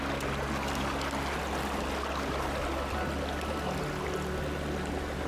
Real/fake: real